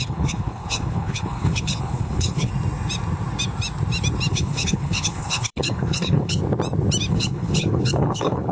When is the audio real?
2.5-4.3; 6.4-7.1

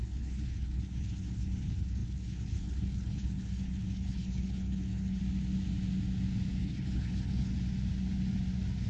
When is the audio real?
5.2-6.6; 7.5-8.9

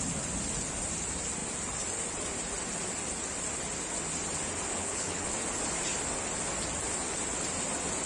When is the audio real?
0.0-4.7; 5.3-8.1

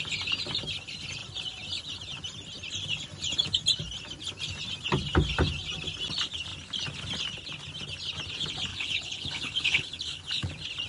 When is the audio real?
0.0-8.7; 10.5-10.9

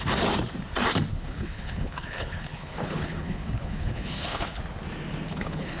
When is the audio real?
0.0-1.1; 4.6-5.3

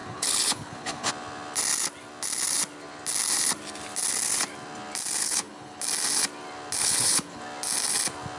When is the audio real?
1.1-5.2; 5.8-6.8; 7.4-8.4